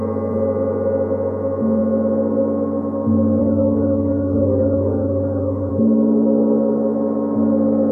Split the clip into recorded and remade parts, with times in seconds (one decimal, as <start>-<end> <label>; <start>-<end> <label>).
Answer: 0.0-3.4 recorded; 3.4-5.7 remade; 5.7-7.9 recorded